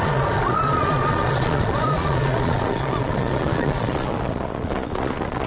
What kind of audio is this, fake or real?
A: fake